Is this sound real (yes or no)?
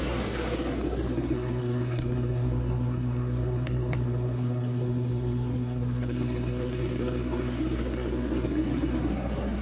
no